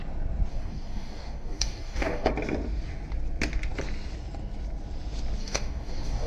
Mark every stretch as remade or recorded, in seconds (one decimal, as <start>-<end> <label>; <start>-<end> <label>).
0.0-0.5 recorded; 0.5-2.3 remade; 2.3-5.4 recorded; 5.4-6.3 remade